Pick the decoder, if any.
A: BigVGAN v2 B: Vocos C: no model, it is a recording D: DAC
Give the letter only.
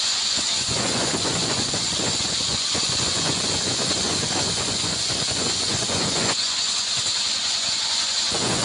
B